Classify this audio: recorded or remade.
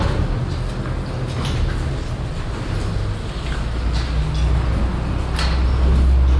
recorded